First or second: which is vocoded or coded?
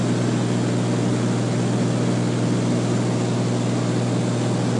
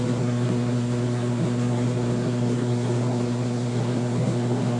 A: second